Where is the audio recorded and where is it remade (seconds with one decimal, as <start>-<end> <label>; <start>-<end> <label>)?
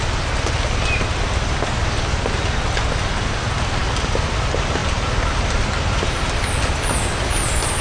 0.0-7.8 recorded